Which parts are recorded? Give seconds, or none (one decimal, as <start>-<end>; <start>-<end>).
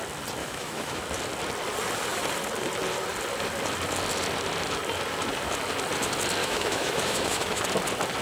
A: 0.0-0.4; 1.0-6.4; 7.6-8.2